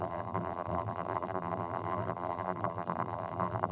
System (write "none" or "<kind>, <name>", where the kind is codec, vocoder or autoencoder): vocoder, BigVGAN v2